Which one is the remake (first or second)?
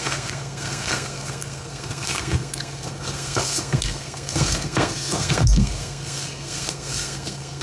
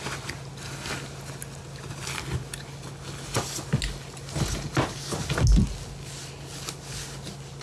first